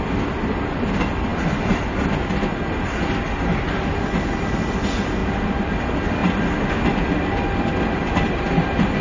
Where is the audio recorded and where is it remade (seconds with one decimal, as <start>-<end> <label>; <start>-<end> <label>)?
0.0-9.0 recorded